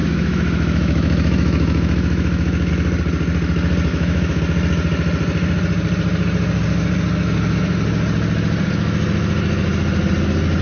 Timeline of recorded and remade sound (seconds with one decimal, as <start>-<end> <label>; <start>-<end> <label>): 0.0-2.7 remade; 2.7-3.9 recorded; 3.9-4.4 remade; 4.4-10.6 recorded